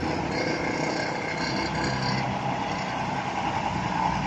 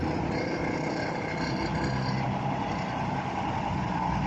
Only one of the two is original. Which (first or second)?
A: first